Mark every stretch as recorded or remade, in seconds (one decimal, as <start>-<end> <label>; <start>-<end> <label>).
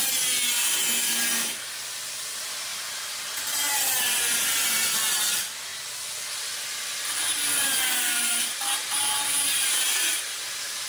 0.0-10.9 recorded